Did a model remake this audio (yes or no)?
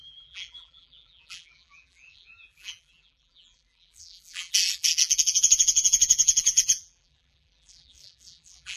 yes